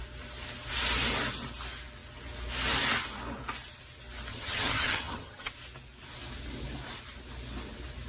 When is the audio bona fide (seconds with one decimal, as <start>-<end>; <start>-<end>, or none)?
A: 0.0-4.3; 5.5-8.1